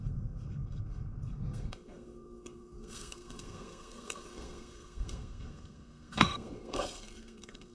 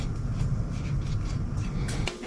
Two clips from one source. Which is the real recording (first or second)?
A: second